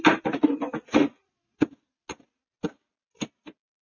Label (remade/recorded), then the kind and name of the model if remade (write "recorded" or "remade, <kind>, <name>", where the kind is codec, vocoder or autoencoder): recorded